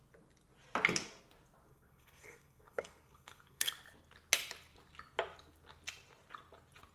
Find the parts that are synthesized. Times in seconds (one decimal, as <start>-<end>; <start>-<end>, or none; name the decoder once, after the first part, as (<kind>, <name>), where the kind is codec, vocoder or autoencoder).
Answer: 1.7-3.7 (codec, SNAC)